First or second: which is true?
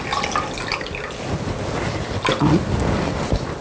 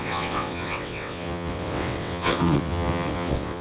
first